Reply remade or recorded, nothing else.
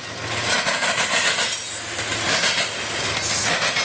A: recorded